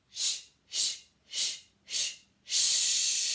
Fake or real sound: real